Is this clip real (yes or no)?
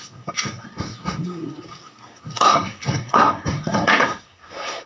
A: no